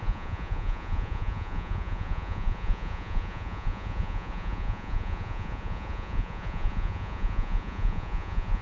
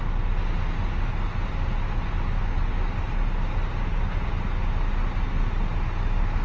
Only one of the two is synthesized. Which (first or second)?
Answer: first